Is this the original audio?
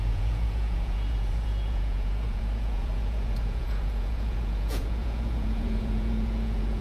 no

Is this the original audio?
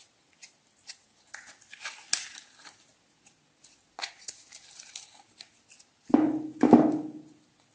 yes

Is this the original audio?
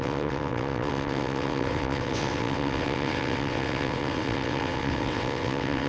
no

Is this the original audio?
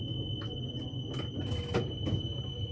yes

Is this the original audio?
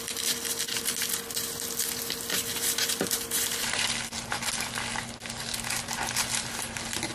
no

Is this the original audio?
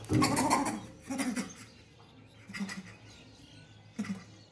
yes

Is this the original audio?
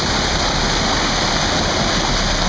yes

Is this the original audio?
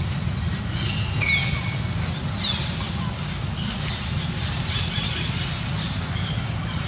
yes